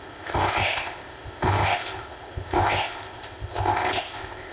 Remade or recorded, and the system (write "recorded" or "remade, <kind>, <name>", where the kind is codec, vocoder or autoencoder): remade, codec, ZipCodec